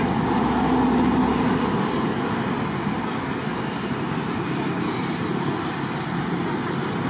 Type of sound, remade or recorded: recorded